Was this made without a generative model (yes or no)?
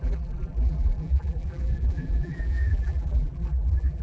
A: no